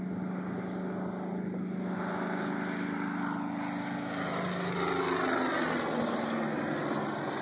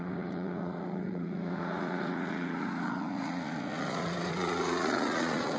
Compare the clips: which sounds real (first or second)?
first